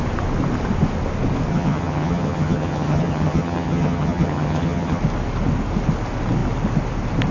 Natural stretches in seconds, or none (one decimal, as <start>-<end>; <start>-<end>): 0.0-1.5; 5.0-7.3